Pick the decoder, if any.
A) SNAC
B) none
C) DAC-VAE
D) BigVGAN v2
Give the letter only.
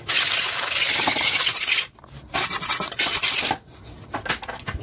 B